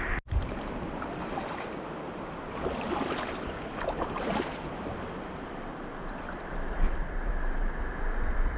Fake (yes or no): no